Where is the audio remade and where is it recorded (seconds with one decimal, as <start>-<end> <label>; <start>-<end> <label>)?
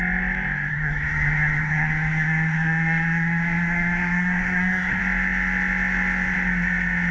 0.0-0.7 recorded; 0.7-5.0 remade; 5.0-7.1 recorded